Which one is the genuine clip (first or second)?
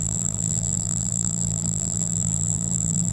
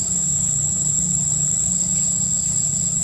second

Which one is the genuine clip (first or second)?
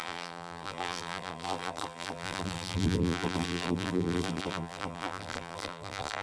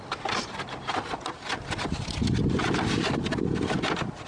second